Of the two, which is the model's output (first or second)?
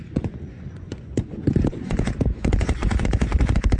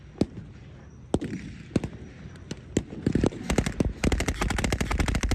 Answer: first